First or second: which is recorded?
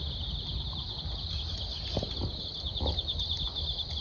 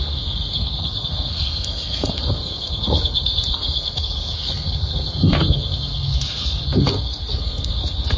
first